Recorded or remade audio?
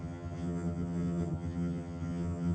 remade